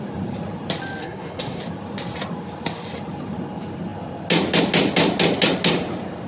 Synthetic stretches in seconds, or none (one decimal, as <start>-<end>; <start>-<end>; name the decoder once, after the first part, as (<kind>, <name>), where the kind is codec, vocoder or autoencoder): 1.0-1.6 (codec, SNAC)